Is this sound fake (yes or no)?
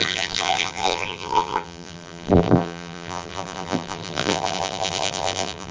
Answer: yes